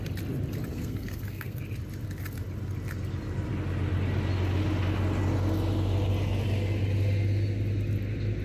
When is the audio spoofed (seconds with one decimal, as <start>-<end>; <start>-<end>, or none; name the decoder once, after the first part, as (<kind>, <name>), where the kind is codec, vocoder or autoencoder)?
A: 0.7-1.6 (codec, SNAC)